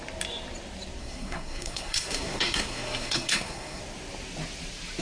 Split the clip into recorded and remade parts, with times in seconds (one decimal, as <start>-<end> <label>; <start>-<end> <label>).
0.0-1.0 recorded; 1.0-3.8 remade; 3.8-5.0 recorded